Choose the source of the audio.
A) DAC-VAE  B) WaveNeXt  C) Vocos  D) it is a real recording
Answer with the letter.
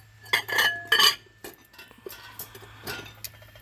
D